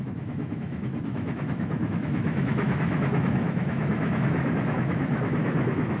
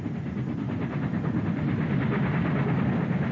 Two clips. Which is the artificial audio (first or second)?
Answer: first